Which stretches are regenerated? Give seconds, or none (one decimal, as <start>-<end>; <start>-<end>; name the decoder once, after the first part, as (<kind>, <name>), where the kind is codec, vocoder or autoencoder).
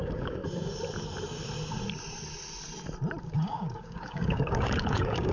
0.0-0.4 (codec, DAC); 3.2-5.3